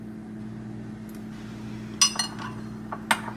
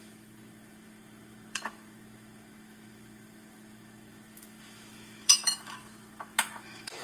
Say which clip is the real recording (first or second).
first